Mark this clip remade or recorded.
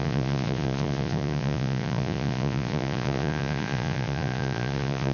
remade